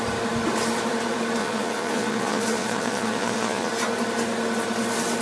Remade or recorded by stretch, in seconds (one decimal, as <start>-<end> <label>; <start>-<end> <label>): 0.0-1.4 recorded; 1.4-3.7 remade; 3.7-5.2 recorded